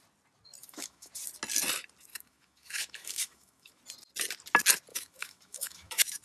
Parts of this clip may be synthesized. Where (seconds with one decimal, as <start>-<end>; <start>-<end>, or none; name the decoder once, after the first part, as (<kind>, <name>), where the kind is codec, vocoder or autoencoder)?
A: 0.6-1.1 (autoencoder, DAC-VAE); 2.1-3.8; 4.9-6.2